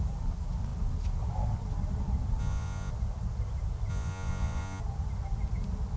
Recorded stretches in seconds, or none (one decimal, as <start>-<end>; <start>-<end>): 0.0-2.4; 2.9-3.9; 4.8-6.0